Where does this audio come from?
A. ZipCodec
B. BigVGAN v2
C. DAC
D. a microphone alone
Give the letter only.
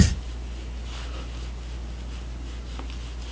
D